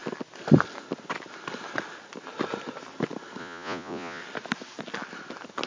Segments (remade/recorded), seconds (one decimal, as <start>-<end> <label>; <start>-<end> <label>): 0.0-3.4 recorded; 3.4-4.2 remade; 4.2-5.7 recorded